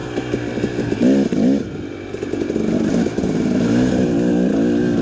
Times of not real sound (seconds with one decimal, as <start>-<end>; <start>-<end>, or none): none